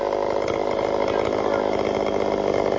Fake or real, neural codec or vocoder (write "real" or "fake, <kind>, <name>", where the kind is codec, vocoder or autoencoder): real